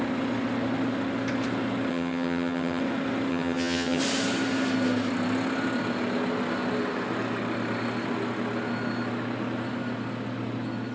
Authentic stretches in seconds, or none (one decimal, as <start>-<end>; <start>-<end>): 0.0-1.9; 2.8-3.3; 4.0-10.9